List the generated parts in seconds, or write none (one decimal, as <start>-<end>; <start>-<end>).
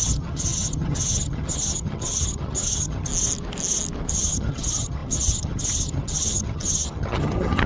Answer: 0.0-3.1; 4.1-7.7